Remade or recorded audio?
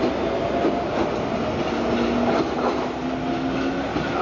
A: recorded